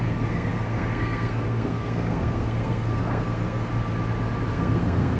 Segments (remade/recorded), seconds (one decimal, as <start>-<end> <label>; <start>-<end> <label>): 0.0-3.7 remade; 3.7-4.5 recorded; 4.5-5.2 remade